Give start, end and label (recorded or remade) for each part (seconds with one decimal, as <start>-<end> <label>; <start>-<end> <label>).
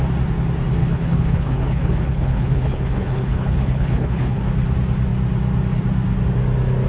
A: 0.0-0.8 recorded; 0.8-4.4 remade; 4.4-6.9 recorded